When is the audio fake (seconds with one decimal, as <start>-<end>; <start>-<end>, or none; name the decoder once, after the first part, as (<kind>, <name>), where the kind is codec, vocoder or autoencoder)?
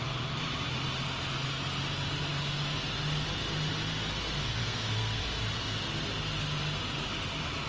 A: 4.6-5.2 (codec, SNAC)